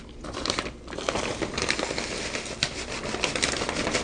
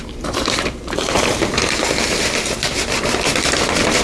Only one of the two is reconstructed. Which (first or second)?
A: second